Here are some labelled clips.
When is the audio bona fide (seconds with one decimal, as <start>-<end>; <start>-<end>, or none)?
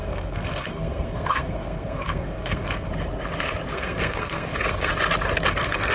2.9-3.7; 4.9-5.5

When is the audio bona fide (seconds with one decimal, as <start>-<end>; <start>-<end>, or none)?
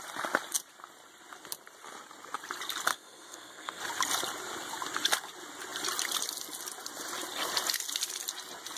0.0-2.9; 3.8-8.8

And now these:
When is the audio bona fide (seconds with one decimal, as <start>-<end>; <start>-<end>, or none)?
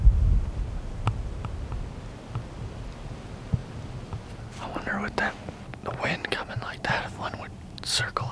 0.0-8.3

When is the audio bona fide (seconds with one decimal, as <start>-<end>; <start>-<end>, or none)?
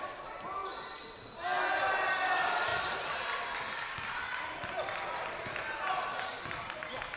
0.0-7.2